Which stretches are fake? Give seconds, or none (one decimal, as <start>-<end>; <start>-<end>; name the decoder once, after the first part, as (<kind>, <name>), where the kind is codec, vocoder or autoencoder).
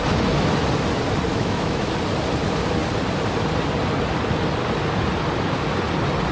1.3-1.9 (autoencoder, DAC-VAE)